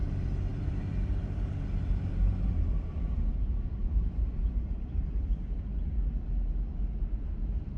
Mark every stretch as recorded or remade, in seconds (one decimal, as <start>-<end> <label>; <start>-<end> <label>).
0.0-5.7 remade; 5.7-7.0 recorded; 7.0-7.8 remade

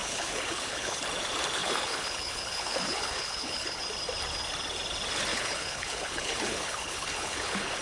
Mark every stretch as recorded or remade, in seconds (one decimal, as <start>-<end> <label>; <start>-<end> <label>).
0.0-1.0 remade; 1.0-1.6 recorded; 1.6-3.8 remade; 3.8-5.3 recorded; 5.3-7.8 remade

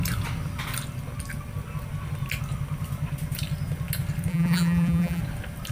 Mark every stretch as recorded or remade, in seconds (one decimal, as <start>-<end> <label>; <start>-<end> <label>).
0.0-4.3 recorded; 4.3-5.2 remade; 5.2-5.7 recorded

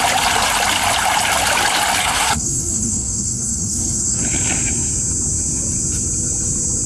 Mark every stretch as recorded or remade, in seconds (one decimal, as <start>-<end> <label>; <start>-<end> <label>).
0.0-2.0 recorded; 2.0-4.2 remade; 4.2-6.9 recorded